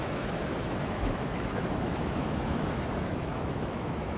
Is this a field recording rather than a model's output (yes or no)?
no